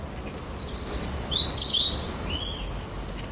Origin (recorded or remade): recorded